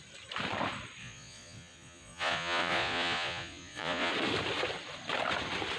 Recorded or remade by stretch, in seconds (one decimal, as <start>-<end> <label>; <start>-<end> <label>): 0.0-1.0 recorded; 1.0-4.1 remade; 4.1-5.8 recorded